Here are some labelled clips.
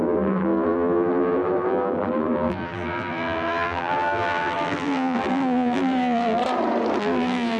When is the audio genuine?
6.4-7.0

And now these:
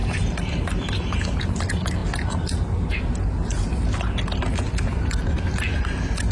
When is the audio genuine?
1.4-6.3

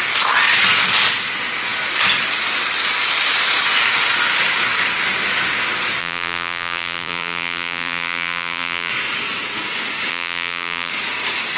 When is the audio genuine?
0.0-6.0; 8.9-10.1; 10.9-11.6